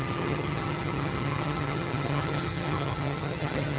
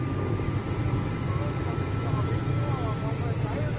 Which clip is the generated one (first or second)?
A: first